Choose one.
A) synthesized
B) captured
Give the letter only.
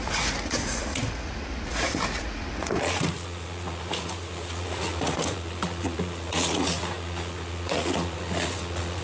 A